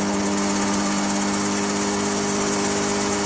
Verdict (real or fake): real